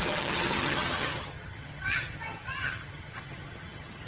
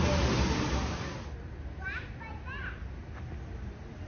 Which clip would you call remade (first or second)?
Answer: first